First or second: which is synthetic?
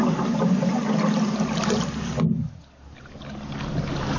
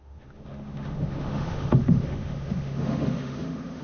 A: second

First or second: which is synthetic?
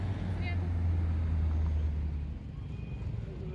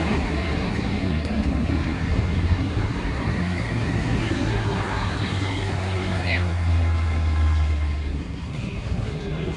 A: second